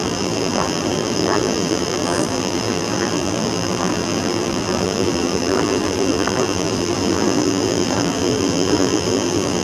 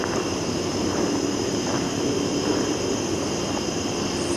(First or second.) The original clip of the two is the second